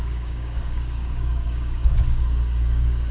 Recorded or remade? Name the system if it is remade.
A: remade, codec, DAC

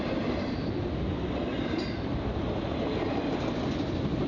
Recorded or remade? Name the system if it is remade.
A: recorded